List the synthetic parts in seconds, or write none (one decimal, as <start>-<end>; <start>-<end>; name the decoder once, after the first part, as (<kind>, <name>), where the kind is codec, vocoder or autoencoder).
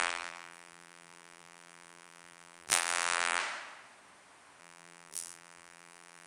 0.0-3.4 (vocoder, BigVGAN v2); 4.6-6.3